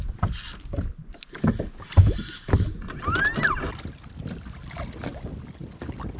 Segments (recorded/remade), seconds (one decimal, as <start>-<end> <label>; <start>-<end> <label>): 0.0-6.2 recorded